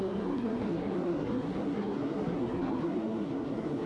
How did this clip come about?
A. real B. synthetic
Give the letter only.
B